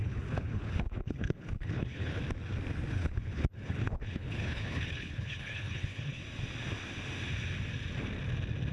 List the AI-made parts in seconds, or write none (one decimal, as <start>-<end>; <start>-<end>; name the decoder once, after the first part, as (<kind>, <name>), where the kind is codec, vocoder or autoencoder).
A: 0.0-2.2 (codec, HILCodec); 2.9-6.2